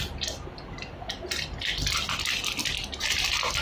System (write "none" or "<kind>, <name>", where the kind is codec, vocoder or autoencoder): none